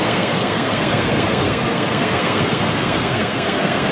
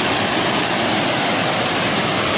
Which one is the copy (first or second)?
first